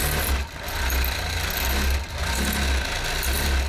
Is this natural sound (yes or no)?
yes